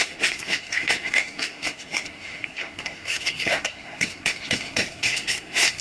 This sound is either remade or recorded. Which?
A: remade